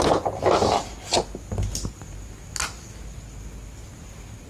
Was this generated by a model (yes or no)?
no